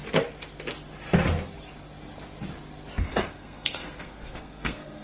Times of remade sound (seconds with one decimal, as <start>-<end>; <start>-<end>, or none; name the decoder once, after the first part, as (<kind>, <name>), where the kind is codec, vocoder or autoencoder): 3.0-5.0 (codec, SNAC)